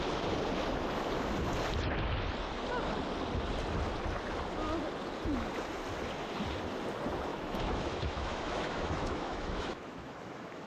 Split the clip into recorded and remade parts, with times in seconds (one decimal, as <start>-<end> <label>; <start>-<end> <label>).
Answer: 0.0-7.3 recorded; 7.3-10.7 remade